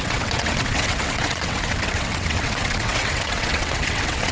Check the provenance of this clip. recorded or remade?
remade